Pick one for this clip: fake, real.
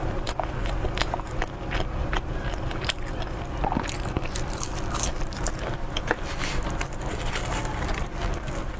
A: real